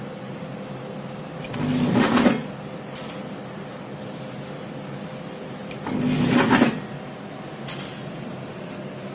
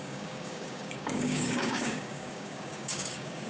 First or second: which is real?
first